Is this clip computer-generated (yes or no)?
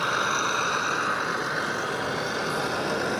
no